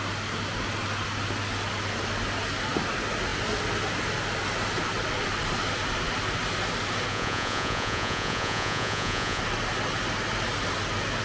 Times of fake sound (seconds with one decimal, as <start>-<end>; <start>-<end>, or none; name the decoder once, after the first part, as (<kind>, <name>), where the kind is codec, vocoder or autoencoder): 7.1-9.4 (vocoder, Vocos)